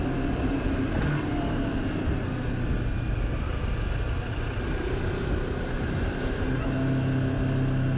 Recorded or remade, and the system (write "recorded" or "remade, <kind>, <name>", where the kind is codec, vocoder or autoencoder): recorded